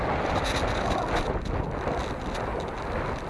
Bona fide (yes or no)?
yes